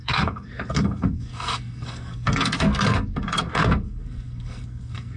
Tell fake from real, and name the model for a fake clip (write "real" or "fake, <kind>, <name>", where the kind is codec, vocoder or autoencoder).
fake, codec, SNAC